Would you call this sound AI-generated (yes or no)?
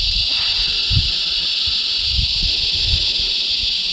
no